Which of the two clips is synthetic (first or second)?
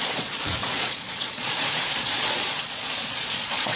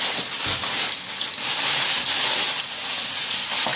first